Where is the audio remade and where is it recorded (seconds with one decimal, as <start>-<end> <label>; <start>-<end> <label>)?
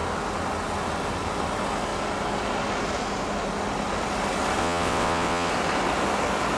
0.0-4.6 recorded; 4.6-5.5 remade; 5.5-6.6 recorded